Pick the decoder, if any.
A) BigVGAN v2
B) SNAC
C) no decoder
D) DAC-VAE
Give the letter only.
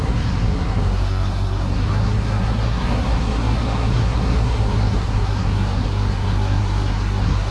B